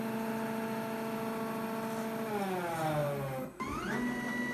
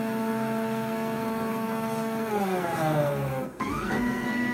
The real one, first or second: first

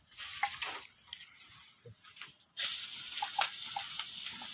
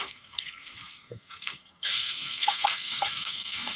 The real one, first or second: first